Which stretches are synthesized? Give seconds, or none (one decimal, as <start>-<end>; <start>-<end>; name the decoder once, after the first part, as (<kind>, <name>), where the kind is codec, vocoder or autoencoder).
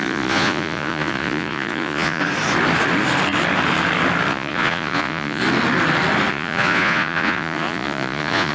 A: 0.0-2.2 (vocoder, Vocos); 4.3-5.4; 6.3-8.5